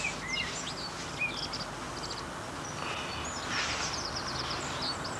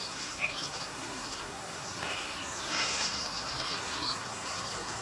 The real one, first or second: first